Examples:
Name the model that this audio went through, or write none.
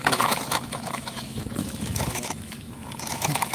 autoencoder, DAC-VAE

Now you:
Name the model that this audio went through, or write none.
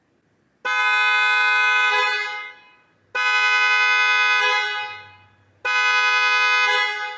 none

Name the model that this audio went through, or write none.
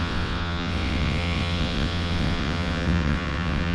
vocoder, WaveNeXt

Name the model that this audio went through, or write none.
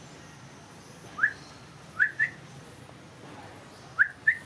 none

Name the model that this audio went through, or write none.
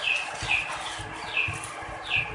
none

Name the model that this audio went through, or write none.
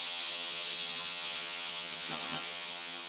vocoder, HiFi-GAN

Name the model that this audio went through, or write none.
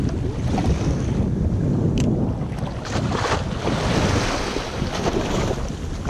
none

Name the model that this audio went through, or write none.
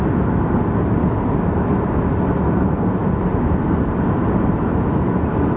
none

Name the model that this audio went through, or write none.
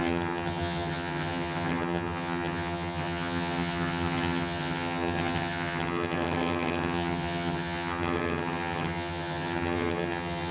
vocoder, HiFi-GAN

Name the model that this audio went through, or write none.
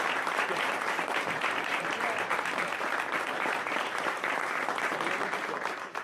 vocoder, BigVGAN v2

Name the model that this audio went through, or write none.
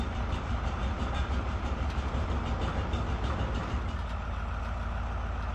none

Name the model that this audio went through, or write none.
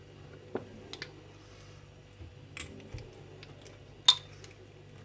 none